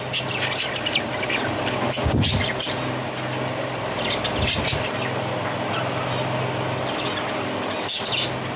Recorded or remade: recorded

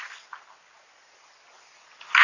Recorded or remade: recorded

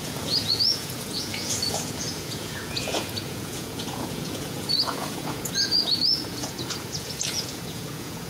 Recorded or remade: remade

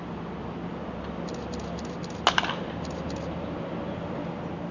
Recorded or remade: recorded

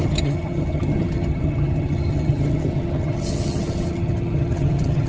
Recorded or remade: remade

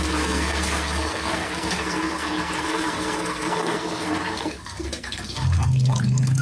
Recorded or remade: remade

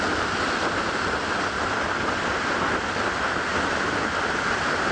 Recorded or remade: recorded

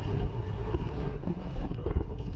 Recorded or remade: remade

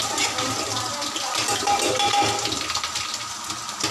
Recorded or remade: recorded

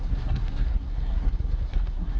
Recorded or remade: remade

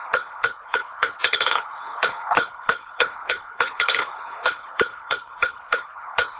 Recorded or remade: remade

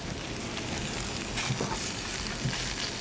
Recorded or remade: recorded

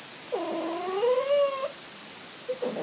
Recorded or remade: recorded